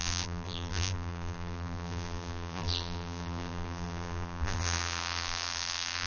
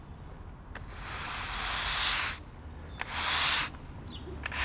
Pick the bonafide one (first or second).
second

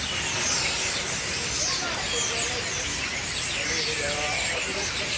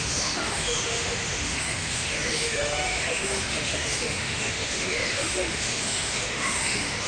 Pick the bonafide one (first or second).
first